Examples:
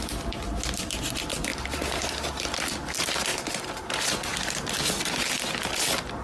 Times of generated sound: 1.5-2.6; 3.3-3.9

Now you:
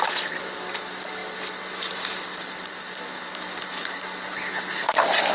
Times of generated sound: none